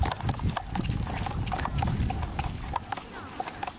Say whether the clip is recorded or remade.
recorded